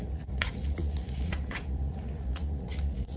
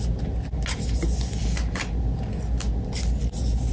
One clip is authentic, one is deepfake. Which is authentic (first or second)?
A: second